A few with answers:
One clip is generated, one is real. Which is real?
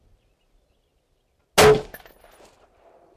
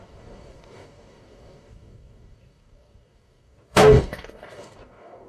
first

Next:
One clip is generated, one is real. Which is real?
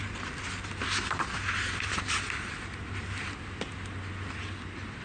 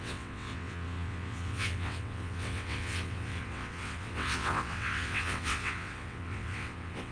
first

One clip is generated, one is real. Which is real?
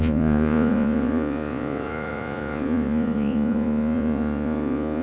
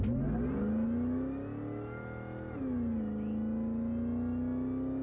second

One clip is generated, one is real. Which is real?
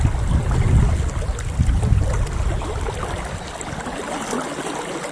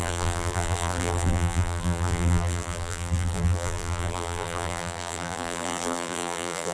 first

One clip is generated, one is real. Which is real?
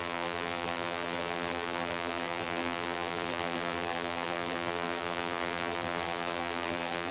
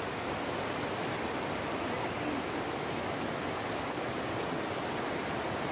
second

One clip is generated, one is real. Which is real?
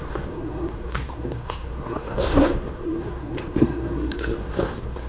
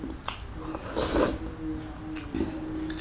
second